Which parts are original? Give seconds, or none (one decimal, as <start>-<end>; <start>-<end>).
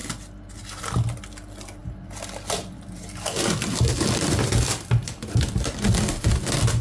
0.0-1.8; 5.9-6.8